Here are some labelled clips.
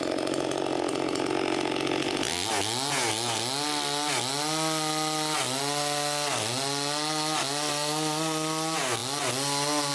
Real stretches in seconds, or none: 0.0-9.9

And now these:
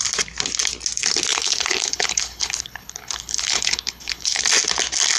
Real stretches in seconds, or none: 0.0-1.3; 4.4-5.2